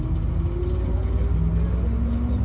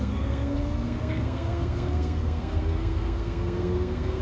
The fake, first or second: second